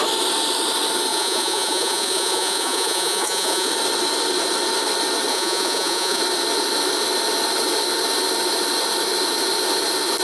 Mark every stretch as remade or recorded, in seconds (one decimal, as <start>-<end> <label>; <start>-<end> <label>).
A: 0.0-1.1 recorded; 1.1-3.7 remade; 3.7-5.3 recorded; 5.3-6.2 remade; 6.2-10.2 recorded